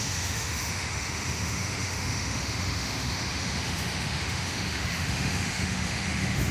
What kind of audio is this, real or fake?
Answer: fake